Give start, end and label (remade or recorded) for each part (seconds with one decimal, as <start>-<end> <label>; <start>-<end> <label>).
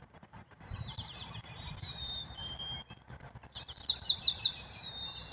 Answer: 0.0-2.4 remade; 2.4-3.9 recorded; 3.9-5.3 remade